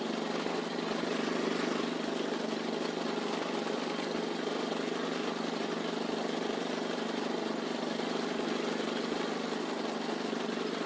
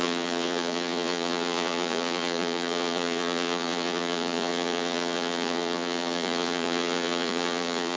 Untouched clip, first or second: first